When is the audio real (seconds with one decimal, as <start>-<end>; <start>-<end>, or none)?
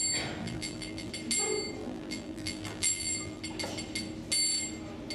0.0-0.4; 1.1-1.8; 3.4-5.1